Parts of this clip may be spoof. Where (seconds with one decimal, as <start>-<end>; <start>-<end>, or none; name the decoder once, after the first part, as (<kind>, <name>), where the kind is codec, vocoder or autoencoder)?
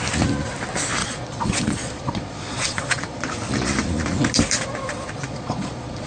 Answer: 1.0-3.3 (vocoder, Vocos); 5.2-6.1